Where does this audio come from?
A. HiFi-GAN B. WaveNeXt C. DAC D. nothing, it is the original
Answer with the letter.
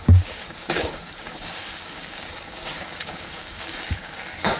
C